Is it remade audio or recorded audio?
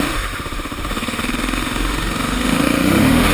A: remade